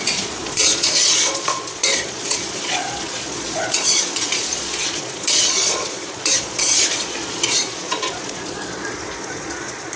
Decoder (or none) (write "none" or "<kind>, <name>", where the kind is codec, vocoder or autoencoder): vocoder, Vocos